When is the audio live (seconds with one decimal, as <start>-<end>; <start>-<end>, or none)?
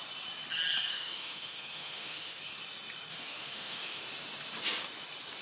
0.0-0.9; 2.4-3.1; 4.0-5.4